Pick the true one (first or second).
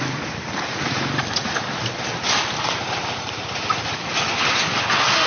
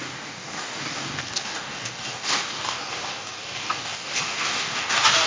first